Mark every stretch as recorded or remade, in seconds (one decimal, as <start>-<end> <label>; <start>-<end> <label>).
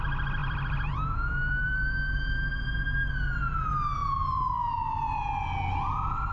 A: 0.0-0.4 recorded; 0.4-3.1 remade; 3.1-4.0 recorded; 4.0-4.7 remade; 4.7-6.3 recorded